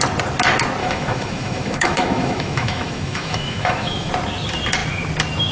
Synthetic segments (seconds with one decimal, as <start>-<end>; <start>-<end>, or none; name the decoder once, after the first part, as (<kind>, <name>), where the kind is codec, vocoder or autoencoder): 0.8-4.1 (autoencoder, DAC-VAE)